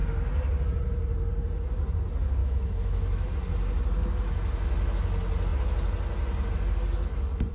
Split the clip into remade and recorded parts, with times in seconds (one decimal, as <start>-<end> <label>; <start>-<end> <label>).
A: 0.0-2.4 recorded; 2.4-3.3 remade; 3.3-7.5 recorded